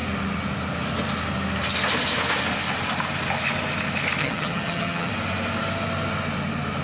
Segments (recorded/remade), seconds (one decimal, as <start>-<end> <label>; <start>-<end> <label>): 0.0-4.2 recorded; 4.2-5.1 remade; 5.1-6.8 recorded